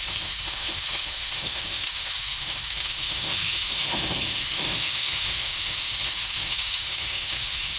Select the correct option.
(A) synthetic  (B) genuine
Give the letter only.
A